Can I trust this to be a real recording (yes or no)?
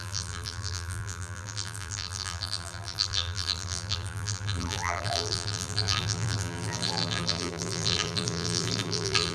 no